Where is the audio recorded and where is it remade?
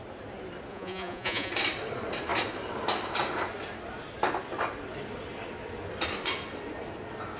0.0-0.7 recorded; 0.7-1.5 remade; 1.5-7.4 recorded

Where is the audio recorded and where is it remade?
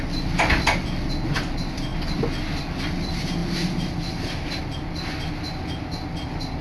0.0-6.6 recorded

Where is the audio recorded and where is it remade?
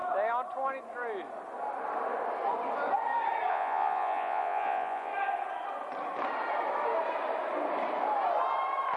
0.0-3.5 recorded; 3.5-5.1 remade; 5.1-9.0 recorded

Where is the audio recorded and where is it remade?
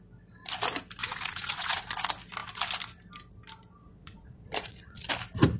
0.0-1.0 recorded; 1.0-1.8 remade; 1.8-3.8 recorded; 3.8-5.1 remade; 5.1-5.6 recorded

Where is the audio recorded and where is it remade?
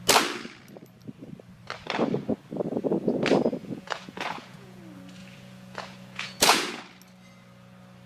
0.0-3.6 recorded; 3.6-4.8 remade; 4.8-5.2 recorded; 5.2-6.8 remade; 6.8-8.1 recorded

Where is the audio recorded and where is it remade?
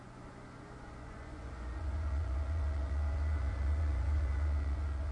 0.0-5.1 remade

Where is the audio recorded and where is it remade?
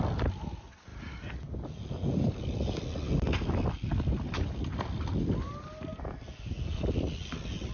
0.0-7.7 recorded